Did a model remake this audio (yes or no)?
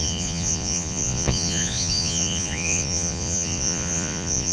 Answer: yes